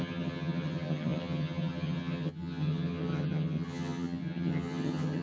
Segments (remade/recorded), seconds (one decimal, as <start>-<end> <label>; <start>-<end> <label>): 0.0-5.2 remade